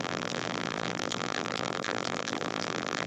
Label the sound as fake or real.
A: fake